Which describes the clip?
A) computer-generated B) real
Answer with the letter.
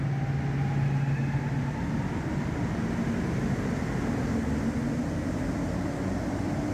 B